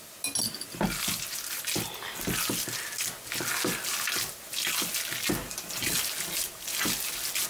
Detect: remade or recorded recorded